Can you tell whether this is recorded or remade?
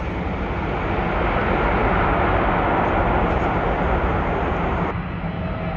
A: recorded